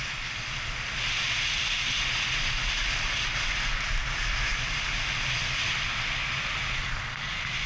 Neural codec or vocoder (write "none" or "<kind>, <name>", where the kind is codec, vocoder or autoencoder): none